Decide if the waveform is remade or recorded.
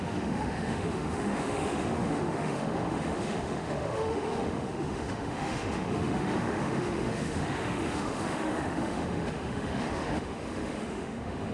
remade